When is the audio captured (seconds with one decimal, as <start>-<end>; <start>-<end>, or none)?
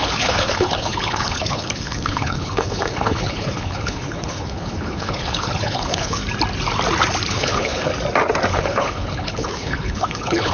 6.2-7.3; 7.9-8.5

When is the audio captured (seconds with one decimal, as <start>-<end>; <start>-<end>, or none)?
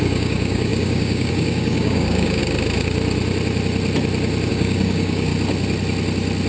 2.4-4.5; 5.3-6.5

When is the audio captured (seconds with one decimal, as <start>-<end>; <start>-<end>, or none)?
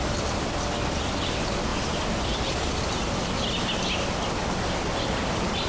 0.0-5.7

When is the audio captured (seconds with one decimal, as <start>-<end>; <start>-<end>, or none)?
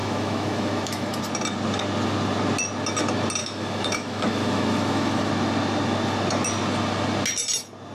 1.2-3.4; 5.3-7.9